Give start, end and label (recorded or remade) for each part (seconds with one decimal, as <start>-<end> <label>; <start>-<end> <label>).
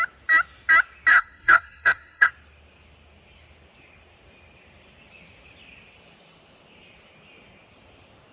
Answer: 0.0-1.1 recorded; 1.1-2.3 remade; 2.3-8.3 recorded